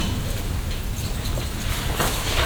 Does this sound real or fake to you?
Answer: real